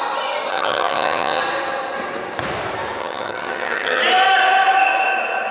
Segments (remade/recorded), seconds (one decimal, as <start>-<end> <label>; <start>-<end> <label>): 0.0-0.5 recorded; 0.5-1.4 remade; 1.4-3.0 recorded; 3.0-4.0 remade; 4.0-5.5 recorded